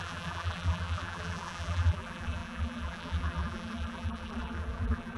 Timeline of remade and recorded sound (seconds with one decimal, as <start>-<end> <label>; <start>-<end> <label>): 0.0-5.2 remade

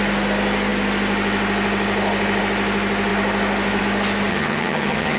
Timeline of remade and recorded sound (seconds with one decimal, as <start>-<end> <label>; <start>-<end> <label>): 0.0-4.3 recorded; 4.3-5.2 remade

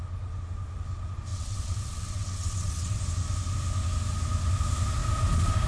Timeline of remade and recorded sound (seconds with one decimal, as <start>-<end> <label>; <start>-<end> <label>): 0.0-1.3 recorded; 1.3-3.0 remade; 3.0-5.7 recorded

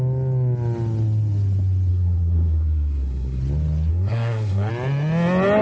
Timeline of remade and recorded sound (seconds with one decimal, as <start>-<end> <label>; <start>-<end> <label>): 0.0-1.9 recorded; 1.9-3.4 remade; 3.4-3.9 recorded; 3.9-4.7 remade; 4.7-5.6 recorded

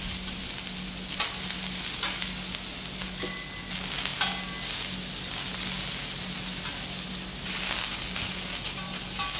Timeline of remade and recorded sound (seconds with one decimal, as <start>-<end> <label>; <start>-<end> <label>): 0.0-9.4 recorded